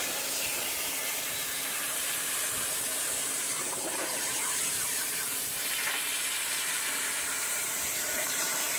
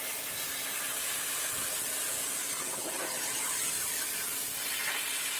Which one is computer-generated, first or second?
first